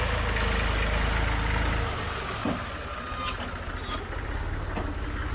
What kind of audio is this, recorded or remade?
recorded